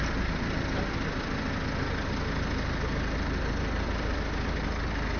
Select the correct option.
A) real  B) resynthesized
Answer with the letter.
A